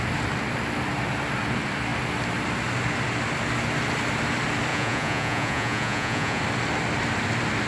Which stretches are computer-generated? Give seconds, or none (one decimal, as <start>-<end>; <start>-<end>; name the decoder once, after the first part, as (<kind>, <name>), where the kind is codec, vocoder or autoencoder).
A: 4.7-6.4 (vocoder, Vocos)